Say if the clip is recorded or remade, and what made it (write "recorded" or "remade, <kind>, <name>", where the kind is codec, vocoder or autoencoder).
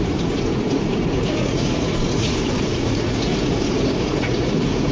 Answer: remade, vocoder, Vocos